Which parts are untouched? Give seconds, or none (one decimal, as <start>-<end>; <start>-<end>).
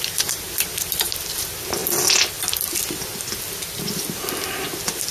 0.0-5.1